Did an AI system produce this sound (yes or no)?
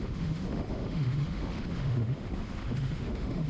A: yes